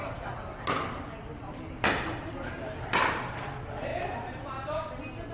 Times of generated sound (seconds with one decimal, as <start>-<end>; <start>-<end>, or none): none